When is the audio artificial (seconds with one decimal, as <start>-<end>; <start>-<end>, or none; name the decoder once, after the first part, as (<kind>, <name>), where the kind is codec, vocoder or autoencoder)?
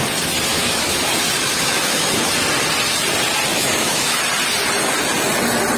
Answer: 0.5-2.3 (autoencoder, DAC-VAE); 3.5-4.2